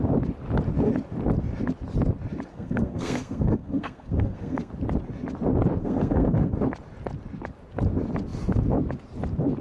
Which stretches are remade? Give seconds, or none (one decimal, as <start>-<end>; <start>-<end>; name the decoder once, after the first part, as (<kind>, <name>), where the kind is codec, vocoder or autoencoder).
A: 2.5-4.7 (codec, SNAC); 5.8-6.5